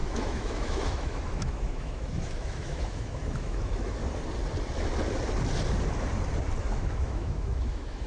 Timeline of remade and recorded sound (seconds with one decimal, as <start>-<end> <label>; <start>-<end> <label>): 0.0-4.0 remade; 4.0-6.6 recorded; 6.6-8.1 remade